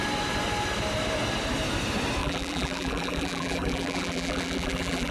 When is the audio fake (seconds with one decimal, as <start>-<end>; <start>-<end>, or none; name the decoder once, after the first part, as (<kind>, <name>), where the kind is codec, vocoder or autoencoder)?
2.2-5.1 (vocoder, BigVGAN v2)

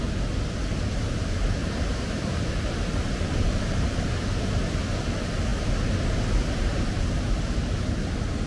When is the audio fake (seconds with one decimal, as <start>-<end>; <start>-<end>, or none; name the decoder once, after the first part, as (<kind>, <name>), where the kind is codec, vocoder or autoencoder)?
1.6-4.8 (vocoder, BigVGAN v2)

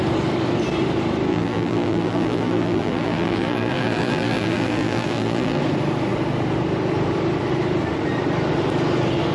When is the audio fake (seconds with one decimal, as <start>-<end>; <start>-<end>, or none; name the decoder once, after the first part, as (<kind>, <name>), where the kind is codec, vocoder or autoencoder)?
1.3-5.6 (vocoder, BigVGAN v2)

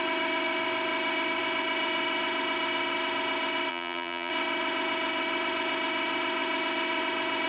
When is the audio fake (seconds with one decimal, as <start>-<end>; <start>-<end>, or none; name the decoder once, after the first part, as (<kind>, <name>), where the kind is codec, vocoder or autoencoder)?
3.7-4.3 (vocoder, BigVGAN v2)

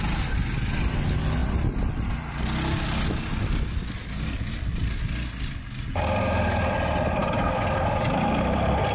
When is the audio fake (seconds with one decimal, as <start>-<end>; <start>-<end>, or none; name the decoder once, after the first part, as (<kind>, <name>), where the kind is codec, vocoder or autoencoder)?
1.4-2.4 (vocoder, BigVGAN v2); 7.2-8.9

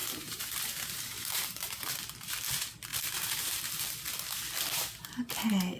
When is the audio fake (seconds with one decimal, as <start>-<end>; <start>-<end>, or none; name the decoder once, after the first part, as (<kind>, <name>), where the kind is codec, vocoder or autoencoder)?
0.0-1.9 (vocoder, BigVGAN v2); 2.9-3.8

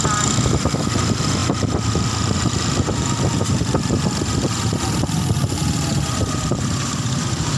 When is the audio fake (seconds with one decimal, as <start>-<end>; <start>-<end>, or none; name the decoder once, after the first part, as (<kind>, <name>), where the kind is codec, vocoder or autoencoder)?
0.0-7.6 (vocoder, BigVGAN v2)

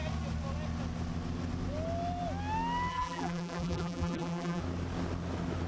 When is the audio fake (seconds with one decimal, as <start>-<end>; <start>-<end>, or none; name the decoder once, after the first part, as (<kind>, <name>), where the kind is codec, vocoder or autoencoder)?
2.9-4.6 (vocoder, BigVGAN v2)